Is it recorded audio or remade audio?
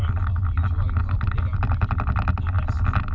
recorded